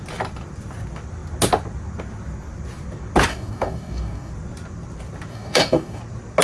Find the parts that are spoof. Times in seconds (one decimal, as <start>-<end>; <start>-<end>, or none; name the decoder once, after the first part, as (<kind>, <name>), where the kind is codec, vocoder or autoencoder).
3.3-4.3 (codec, DAC); 5.3-6.0